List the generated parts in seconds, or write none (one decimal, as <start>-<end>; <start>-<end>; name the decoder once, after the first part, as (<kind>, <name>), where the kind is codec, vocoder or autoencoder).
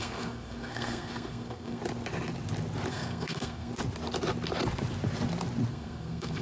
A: 0.0-1.8 (codec, SNAC); 2.9-3.7; 5.7-6.4